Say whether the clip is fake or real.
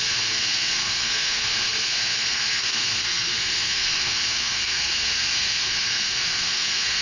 fake